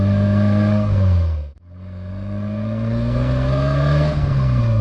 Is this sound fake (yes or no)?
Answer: yes